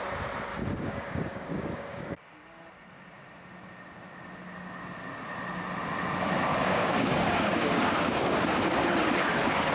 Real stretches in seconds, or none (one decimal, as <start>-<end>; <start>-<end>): 0.0-0.5; 2.2-6.5; 8.5-9.7